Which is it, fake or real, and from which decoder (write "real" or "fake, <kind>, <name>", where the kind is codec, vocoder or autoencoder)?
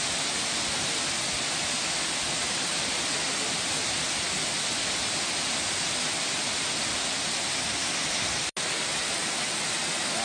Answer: real